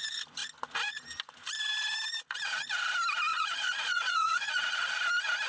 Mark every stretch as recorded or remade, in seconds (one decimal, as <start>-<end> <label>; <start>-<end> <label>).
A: 0.0-3.3 recorded; 3.3-4.9 remade; 4.9-5.5 recorded